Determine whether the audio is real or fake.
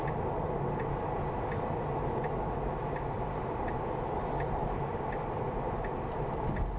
real